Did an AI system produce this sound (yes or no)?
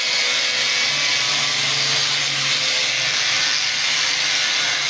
no